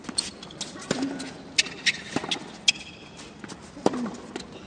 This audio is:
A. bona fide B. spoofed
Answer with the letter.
A